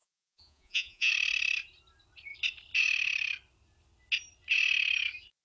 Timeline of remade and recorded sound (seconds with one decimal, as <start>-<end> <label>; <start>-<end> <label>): 0.0-1.1 remade; 1.1-5.4 recorded